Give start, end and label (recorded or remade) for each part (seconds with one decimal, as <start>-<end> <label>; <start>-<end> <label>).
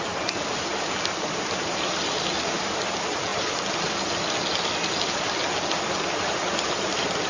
0.0-7.3 recorded